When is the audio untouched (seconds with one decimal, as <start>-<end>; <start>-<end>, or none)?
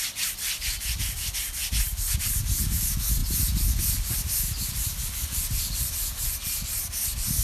0.0-7.4